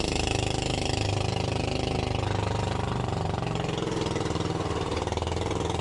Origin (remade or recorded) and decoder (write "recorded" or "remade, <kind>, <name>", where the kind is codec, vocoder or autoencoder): remade, vocoder, BigVGAN v2